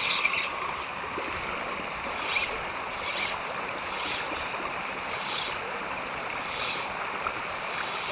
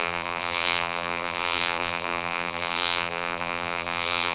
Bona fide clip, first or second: first